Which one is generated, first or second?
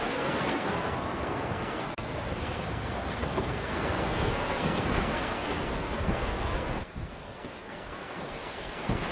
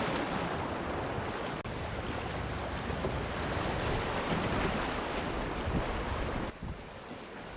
first